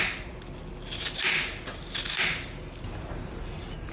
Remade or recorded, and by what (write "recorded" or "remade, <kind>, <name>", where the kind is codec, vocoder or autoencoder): recorded